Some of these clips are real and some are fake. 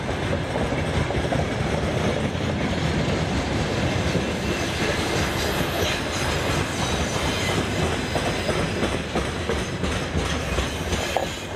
real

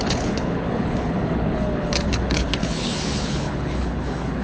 fake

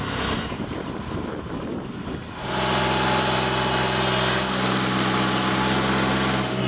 real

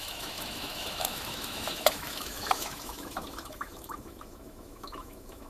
fake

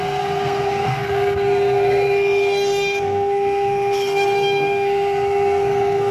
fake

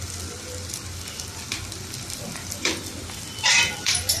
fake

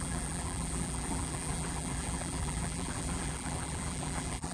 fake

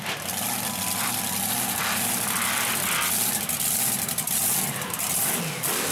real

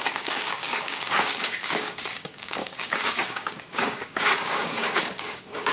fake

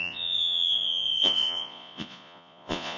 fake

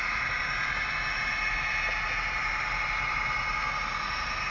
real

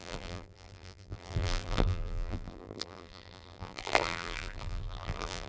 fake